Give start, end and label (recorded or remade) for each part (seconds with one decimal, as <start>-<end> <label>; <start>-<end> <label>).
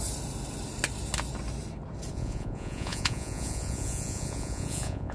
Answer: 0.0-2.1 recorded; 2.1-5.1 remade